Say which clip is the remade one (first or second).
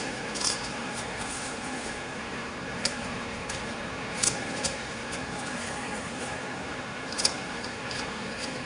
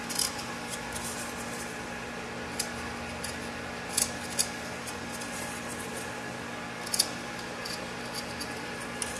first